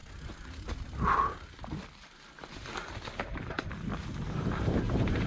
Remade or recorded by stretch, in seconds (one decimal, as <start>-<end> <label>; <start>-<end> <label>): 0.0-3.2 recorded; 3.2-5.3 remade